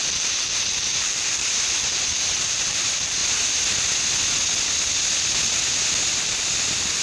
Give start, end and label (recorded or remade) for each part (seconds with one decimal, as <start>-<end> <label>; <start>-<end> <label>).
0.0-3.2 remade; 3.2-6.1 recorded; 6.1-7.0 remade